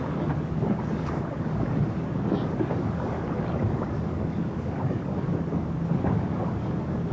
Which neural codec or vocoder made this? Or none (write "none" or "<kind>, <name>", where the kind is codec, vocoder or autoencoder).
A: codec, DAC